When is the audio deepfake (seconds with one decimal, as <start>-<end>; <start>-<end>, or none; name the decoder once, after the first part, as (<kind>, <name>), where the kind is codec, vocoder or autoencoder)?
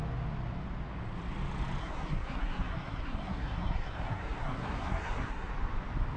1.8-5.5 (codec, SNAC)